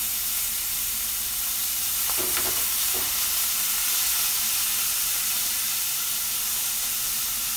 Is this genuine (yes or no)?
yes